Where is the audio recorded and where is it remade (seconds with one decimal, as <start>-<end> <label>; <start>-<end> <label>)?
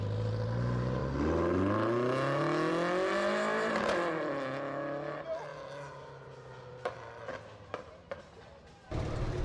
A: 0.0-9.4 recorded